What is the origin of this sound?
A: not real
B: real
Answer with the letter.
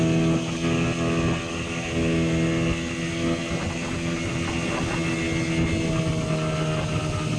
B